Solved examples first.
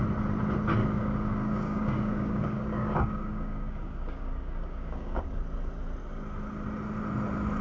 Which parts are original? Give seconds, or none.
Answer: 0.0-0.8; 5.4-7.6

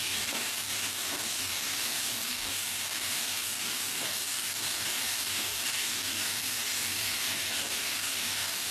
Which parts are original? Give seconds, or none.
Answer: none

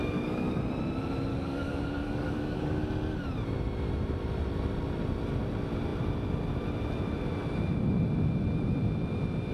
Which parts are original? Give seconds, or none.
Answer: 0.6-1.3; 2.8-9.5

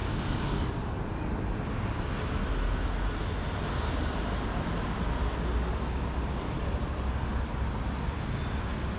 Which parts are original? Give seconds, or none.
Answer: 0.7-9.0